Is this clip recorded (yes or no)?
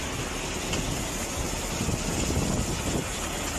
yes